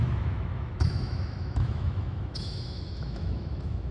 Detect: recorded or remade remade